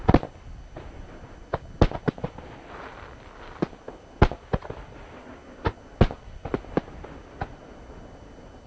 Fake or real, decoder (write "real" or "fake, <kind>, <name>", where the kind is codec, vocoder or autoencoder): real